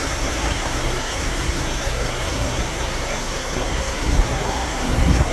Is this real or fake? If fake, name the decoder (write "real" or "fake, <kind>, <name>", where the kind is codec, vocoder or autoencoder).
fake, codec, SNAC